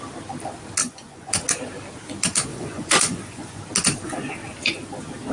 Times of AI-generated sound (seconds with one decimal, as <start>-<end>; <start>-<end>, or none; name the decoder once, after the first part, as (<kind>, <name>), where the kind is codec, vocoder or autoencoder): 0.8-1.3 (vocoder, Vocos); 2.5-3.6